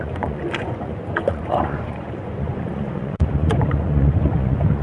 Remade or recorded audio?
remade